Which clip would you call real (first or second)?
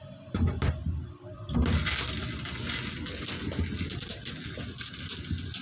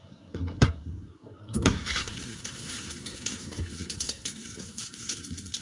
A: first